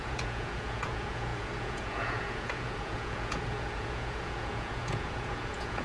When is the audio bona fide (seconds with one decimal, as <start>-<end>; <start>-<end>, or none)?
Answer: none